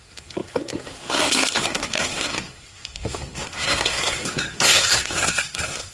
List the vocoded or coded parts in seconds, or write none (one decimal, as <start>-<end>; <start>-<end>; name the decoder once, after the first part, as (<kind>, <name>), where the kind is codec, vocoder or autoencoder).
0.0-5.9 (codec, SNAC)